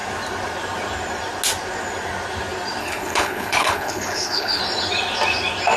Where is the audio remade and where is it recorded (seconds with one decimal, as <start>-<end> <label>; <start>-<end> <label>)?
0.0-2.8 recorded; 2.8-4.6 remade; 4.6-5.8 recorded